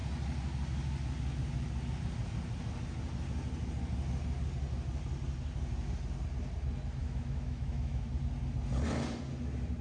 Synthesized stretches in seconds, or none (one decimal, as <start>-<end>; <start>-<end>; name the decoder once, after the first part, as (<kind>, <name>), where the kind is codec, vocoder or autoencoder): 7.0-8.0 (autoencoder, DAC-VAE)